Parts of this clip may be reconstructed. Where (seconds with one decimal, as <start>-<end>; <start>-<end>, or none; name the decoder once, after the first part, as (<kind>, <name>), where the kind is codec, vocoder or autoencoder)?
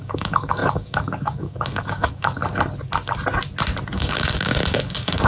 0.0-2.4 (codec, DAC); 3.9-5.3